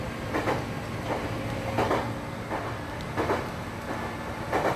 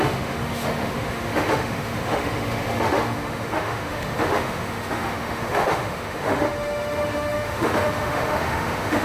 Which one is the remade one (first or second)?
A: second